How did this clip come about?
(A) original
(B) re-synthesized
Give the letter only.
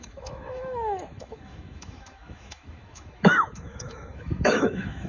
B